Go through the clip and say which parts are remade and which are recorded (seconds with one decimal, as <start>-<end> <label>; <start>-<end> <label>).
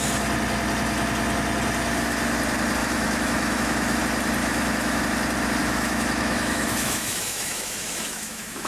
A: 0.0-2.8 recorded; 2.8-4.0 remade; 4.0-4.4 recorded; 4.4-5.0 remade; 5.0-5.6 recorded; 5.6-8.7 remade